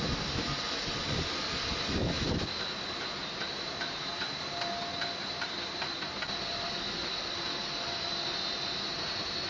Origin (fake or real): real